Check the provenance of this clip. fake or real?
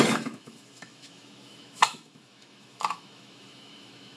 fake